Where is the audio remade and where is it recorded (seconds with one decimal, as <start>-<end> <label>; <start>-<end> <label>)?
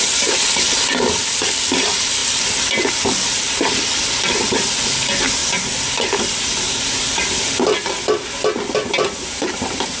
0.0-5.4 recorded; 5.4-6.2 remade; 6.2-10.0 recorded